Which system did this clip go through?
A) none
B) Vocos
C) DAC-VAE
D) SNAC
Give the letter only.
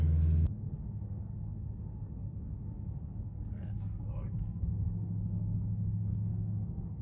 D